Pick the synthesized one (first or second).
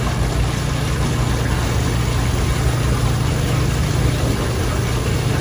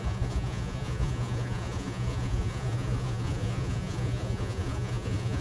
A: second